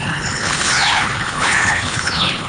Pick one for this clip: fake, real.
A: fake